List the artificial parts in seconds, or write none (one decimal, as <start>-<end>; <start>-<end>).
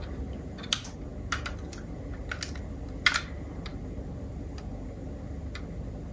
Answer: none